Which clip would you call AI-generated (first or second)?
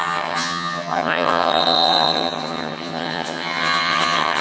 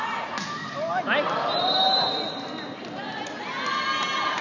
first